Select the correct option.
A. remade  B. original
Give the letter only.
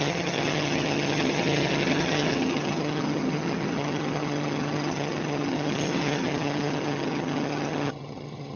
A